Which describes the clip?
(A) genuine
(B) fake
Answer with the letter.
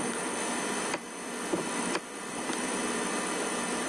B